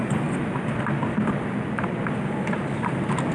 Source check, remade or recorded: recorded